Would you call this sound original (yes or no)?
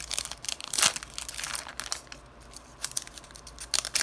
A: yes